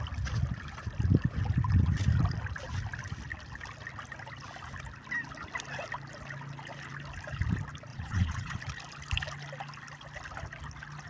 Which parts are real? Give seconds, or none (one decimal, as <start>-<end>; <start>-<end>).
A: 0.0-7.9; 8.6-11.1